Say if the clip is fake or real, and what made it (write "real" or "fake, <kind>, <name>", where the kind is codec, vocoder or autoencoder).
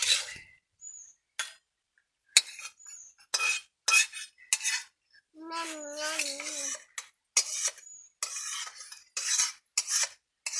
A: real